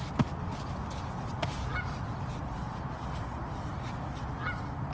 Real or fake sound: real